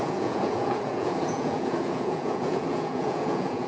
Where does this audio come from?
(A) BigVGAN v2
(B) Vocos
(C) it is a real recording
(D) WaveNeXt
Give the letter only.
B